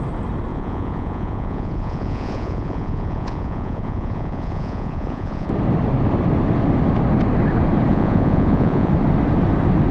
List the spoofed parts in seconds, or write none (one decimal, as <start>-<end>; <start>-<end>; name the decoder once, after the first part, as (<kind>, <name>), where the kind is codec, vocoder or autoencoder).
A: 0.5-5.5 (vocoder, Vocos); 7.9-8.9

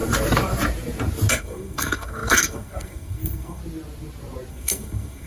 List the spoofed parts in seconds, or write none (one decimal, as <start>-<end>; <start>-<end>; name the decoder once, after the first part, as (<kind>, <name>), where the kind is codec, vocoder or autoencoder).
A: 1.3-3.6 (codec, SNAC); 4.5-5.3

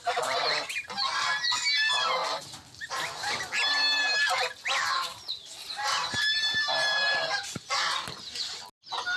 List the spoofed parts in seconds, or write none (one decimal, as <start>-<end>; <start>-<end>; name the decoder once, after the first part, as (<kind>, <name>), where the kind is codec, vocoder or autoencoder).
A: none

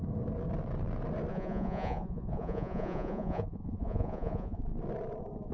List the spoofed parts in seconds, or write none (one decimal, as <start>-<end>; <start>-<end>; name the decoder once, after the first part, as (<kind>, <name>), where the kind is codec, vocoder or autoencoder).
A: 1.3-4.6 (vocoder, Vocos)